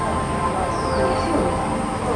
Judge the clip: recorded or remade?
recorded